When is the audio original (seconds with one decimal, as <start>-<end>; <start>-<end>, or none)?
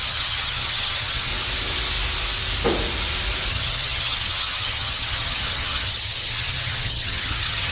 1.3-3.5